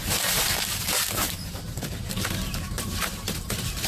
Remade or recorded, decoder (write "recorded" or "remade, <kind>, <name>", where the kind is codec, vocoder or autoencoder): remade, vocoder, BigVGAN v2